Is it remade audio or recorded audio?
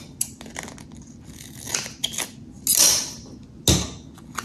recorded